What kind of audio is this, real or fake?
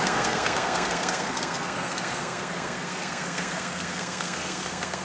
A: fake